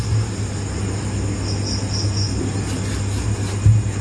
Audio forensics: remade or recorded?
recorded